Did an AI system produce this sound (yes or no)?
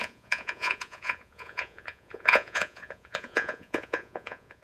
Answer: yes